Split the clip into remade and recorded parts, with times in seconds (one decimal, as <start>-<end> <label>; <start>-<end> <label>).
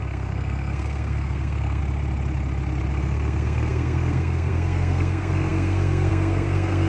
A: 0.0-1.8 remade; 1.8-2.9 recorded; 2.9-6.9 remade